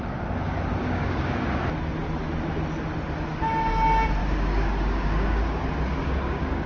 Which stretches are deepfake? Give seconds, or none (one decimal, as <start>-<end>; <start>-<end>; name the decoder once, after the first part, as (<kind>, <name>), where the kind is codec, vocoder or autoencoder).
0.8-1.6 (codec, DAC); 4.2-5.6; 6.0-6.7